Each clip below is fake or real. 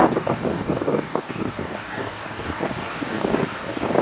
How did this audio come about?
fake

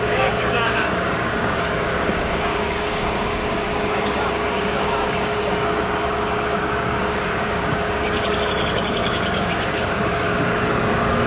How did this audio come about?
fake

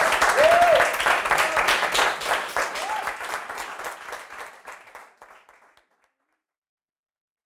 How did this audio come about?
real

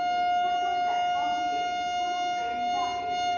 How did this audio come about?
real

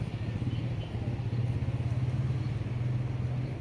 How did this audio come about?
real